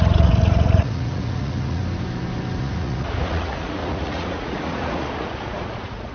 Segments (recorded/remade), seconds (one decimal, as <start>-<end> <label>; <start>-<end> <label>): 0.0-1.8 remade; 1.8-2.6 recorded; 2.6-6.1 remade